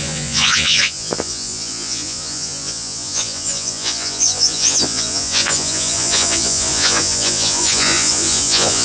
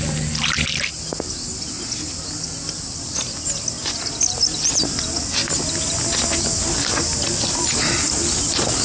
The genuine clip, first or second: second